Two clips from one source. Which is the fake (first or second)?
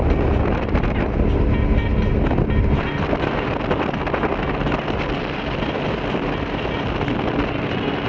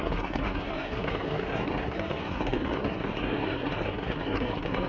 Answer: second